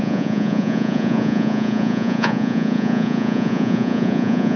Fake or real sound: fake